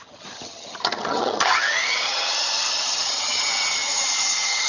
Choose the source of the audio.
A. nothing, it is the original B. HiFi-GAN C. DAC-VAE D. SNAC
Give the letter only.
B